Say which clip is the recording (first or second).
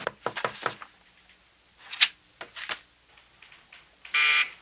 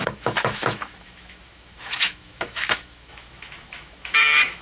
first